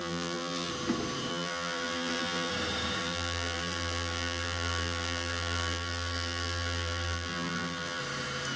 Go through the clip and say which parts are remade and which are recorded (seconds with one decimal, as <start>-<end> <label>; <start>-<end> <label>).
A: 0.0-0.7 remade; 0.7-1.3 recorded; 1.3-2.5 remade; 2.5-3.0 recorded; 3.0-8.0 remade; 8.0-8.6 recorded